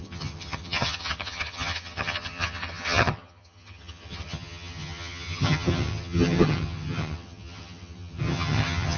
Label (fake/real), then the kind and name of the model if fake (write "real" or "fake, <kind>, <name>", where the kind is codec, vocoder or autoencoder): fake, vocoder, HiFi-GAN